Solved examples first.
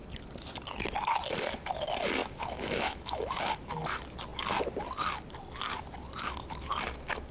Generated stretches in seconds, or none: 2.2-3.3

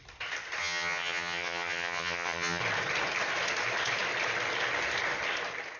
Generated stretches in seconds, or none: 0.6-2.6